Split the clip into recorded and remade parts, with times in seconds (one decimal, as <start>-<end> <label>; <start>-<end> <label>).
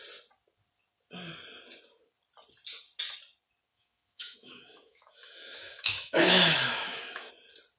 0.0-3.7 recorded; 3.7-7.3 remade; 7.3-7.8 recorded